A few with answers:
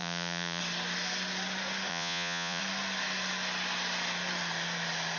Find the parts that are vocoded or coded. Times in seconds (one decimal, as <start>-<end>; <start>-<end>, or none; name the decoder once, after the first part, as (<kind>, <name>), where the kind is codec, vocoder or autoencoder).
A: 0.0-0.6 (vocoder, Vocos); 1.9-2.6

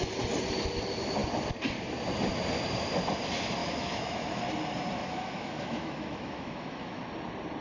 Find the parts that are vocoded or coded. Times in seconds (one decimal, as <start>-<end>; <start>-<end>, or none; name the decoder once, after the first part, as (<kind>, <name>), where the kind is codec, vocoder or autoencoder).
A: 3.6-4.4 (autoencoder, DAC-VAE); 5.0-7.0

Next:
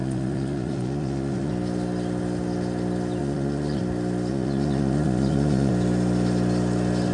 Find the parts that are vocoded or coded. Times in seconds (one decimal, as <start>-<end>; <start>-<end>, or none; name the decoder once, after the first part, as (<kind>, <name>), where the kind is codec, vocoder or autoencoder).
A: 0.0-1.5 (vocoder, Vocos); 3.2-3.8; 4.3-5.7

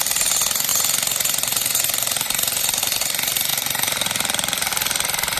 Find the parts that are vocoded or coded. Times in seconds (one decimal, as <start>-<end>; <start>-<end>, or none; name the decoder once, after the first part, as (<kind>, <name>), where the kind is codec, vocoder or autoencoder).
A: 0.7-2.6 (vocoder, BigVGAN v2); 3.5-4.7

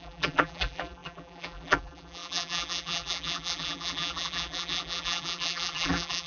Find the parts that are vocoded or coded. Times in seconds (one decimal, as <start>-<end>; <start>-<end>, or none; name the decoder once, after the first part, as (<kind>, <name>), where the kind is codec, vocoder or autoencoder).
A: 0.0-6.3 (vocoder, BigVGAN v2)

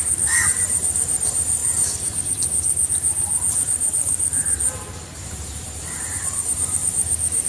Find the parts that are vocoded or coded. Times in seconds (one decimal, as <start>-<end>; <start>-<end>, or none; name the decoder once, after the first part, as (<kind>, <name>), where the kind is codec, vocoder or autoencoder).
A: 0.0-7.5 (vocoder, BigVGAN v2)

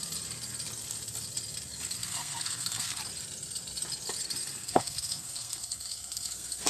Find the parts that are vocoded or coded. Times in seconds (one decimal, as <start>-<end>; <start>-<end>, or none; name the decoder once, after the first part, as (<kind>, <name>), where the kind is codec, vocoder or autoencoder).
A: 2.0-3.0 (codec, SNAC); 4.6-6.7

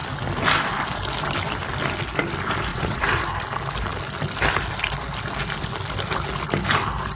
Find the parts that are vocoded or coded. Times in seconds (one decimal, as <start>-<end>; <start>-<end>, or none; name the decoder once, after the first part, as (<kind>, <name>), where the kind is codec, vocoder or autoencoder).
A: 2.7-3.2 (vocoder, Vocos)